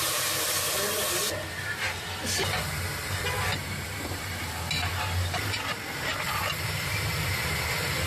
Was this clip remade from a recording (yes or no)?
no